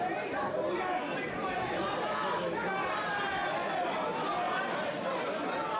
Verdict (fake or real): real